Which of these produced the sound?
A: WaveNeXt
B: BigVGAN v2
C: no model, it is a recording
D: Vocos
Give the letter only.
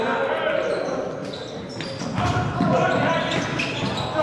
C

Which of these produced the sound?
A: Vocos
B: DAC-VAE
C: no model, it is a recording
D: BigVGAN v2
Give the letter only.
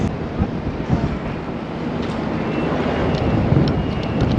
C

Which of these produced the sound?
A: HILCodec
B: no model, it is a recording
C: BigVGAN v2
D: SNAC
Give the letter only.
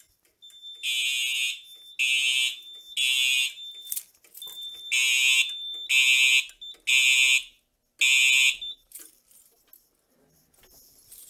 B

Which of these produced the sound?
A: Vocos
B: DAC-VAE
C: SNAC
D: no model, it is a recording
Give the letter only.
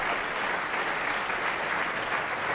D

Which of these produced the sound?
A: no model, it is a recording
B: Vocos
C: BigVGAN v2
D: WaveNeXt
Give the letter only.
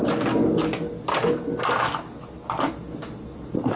A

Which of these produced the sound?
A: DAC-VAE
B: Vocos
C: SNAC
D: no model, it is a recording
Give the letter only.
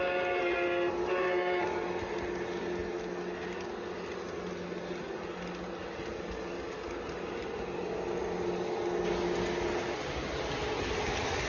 D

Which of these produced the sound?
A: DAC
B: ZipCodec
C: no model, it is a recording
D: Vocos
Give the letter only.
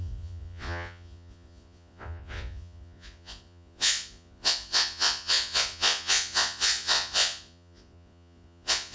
D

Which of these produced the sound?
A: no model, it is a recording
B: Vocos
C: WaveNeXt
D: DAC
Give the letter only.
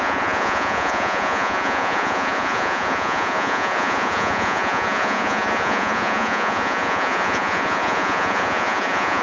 B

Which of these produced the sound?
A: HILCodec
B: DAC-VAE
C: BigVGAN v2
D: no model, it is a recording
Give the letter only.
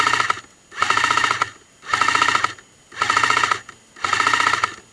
D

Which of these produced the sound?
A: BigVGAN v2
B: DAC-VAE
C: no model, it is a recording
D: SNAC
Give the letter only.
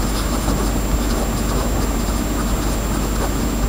C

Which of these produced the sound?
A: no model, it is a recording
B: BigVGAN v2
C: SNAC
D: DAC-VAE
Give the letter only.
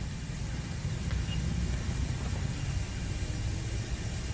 A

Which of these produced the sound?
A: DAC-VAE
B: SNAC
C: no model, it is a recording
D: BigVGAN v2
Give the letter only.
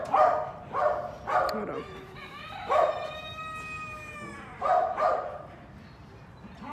C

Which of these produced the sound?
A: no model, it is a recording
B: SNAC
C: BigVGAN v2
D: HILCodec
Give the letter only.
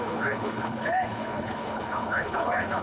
D